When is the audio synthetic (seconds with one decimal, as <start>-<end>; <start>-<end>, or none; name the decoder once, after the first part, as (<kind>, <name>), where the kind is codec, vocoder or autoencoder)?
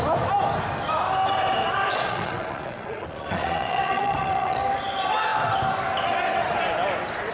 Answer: 1.9-4.6 (vocoder, Vocos)